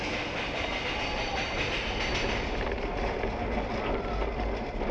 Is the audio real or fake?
real